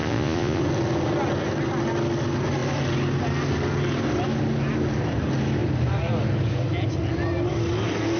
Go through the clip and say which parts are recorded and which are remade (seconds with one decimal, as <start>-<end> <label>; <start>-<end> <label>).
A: 0.0-0.6 remade; 0.6-8.2 recorded